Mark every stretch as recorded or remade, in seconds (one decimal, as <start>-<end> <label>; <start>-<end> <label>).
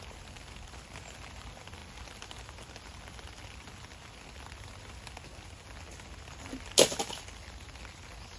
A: 0.0-8.4 recorded